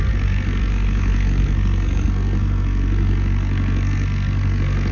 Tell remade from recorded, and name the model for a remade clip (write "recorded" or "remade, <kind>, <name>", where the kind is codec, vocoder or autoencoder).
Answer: remade, codec, SNAC